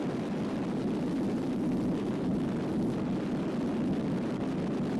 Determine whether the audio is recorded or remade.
recorded